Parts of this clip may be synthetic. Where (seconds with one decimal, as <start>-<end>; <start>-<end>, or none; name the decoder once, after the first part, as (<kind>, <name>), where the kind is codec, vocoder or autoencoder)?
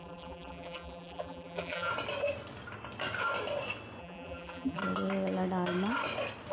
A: 0.0-1.9 (vocoder, BigVGAN v2); 4.0-4.8